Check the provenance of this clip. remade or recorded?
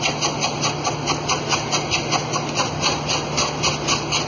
recorded